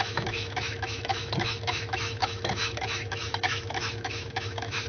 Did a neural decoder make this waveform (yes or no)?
yes